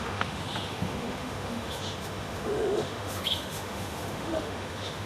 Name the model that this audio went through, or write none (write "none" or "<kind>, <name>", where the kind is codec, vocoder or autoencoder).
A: autoencoder, DAC-VAE